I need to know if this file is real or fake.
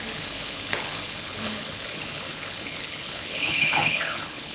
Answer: fake